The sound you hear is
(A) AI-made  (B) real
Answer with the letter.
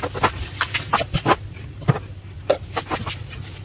B